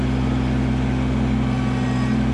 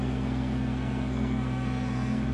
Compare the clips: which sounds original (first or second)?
first